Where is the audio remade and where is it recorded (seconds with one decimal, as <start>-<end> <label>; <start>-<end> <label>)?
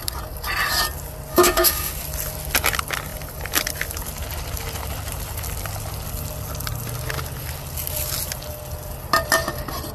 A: 0.0-1.3 recorded; 1.3-1.9 remade; 1.9-9.9 recorded